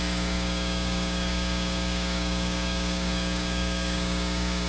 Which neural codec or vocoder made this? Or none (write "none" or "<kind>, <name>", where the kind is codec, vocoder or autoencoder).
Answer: codec, DAC